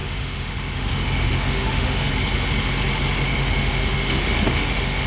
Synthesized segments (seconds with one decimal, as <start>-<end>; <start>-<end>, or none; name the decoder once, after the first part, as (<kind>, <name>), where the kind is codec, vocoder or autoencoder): 0.0-2.1 (autoencoder, DAC-VAE); 3.3-5.1